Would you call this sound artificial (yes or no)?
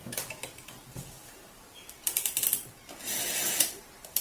yes